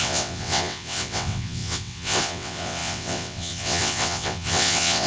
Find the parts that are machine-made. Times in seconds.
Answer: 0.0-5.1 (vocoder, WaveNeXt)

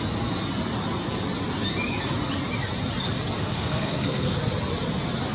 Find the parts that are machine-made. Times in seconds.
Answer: 3.4-4.4 (codec, SNAC)